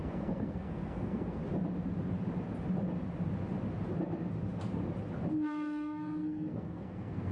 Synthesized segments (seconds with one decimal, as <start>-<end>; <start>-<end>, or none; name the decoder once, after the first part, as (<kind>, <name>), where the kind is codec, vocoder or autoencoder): 0.0-1.4 (codec, SNAC); 5.3-7.3